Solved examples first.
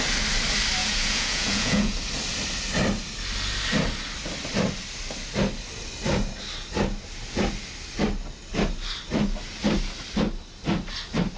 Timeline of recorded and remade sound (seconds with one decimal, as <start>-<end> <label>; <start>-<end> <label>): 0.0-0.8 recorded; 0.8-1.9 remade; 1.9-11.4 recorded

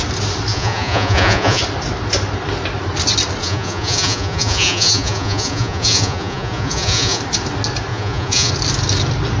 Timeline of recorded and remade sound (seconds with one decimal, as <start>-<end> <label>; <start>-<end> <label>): 0.0-0.5 recorded; 0.5-1.6 remade; 1.6-3.4 recorded; 3.4-7.2 remade; 7.2-7.9 recorded; 7.9-8.5 remade; 8.5-9.4 recorded

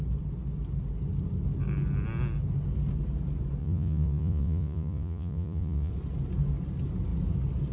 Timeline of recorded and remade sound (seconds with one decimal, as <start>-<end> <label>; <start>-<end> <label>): 0.0-3.6 recorded; 3.6-5.9 remade; 5.9-7.7 recorded